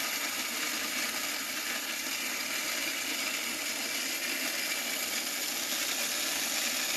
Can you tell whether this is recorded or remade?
recorded